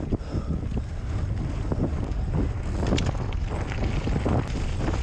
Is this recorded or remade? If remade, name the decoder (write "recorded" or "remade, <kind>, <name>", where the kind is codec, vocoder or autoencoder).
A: recorded